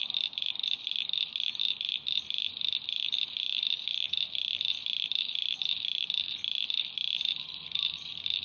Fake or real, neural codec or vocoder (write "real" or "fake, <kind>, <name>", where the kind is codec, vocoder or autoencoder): fake, vocoder, BigVGAN v2